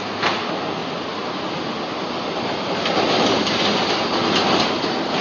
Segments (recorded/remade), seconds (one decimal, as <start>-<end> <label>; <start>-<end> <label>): 0.0-5.2 recorded